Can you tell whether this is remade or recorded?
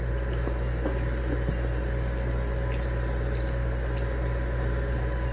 recorded